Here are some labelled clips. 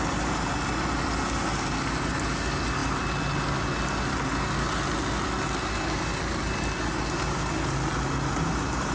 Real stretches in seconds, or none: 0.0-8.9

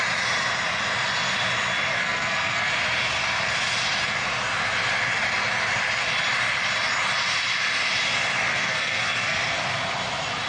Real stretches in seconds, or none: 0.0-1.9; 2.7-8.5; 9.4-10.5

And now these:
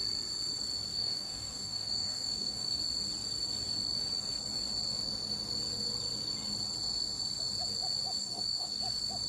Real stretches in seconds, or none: 0.0-0.9; 2.8-8.2; 8.8-9.3

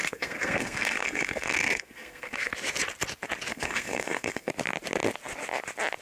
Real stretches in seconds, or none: 2.5-3.5; 4.5-6.0

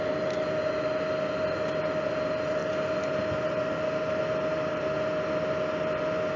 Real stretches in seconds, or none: 0.0-6.4